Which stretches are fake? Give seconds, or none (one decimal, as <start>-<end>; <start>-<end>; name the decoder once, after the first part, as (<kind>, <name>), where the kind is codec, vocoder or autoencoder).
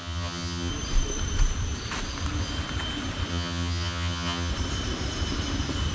0.0-0.7 (vocoder, HiFi-GAN); 3.3-4.5